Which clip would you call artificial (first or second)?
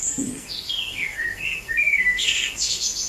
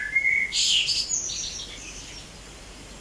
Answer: first